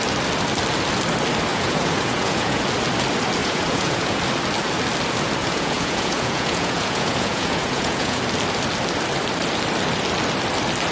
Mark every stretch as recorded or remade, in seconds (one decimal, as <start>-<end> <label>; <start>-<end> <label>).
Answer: 0.0-1.5 recorded; 1.5-2.6 remade; 2.6-3.4 recorded; 3.4-4.2 remade; 4.2-5.4 recorded; 5.4-8.2 remade; 8.2-10.9 recorded